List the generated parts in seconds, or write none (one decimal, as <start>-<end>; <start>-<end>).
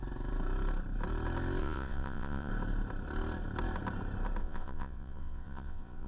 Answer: 1.6-2.5; 4.4-6.1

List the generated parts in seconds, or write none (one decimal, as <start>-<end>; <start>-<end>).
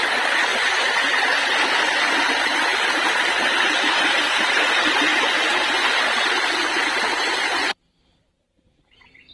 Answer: 0.0-0.5; 2.3-2.7; 3.8-5.1; 7.1-9.3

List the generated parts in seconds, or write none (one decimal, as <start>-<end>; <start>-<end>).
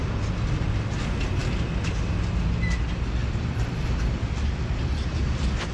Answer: 3.2-4.8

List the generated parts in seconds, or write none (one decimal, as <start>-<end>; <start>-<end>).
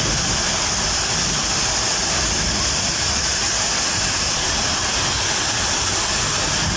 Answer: none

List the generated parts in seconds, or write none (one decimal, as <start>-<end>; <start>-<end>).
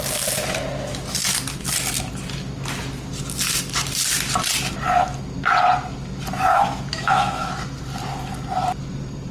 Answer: 6.5-7.5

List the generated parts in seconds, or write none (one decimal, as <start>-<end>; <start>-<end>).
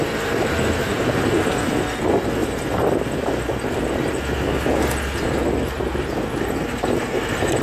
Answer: none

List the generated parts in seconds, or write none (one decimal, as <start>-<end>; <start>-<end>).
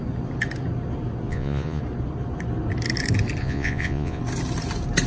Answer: 1.3-1.8; 3.4-4.2